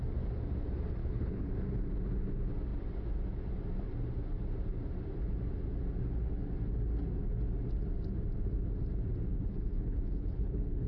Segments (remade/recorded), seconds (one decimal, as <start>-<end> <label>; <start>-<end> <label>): 0.0-1.0 recorded; 1.0-1.5 remade; 1.5-9.3 recorded; 9.3-10.9 remade